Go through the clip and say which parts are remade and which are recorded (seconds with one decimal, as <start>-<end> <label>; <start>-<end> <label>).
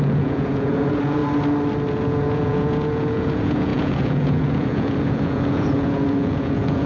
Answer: 0.0-1.2 remade; 1.2-1.9 recorded; 1.9-6.9 remade